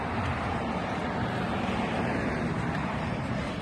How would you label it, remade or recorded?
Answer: remade